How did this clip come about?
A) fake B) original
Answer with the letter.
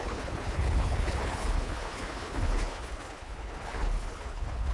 A